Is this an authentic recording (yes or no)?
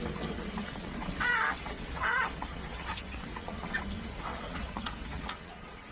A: no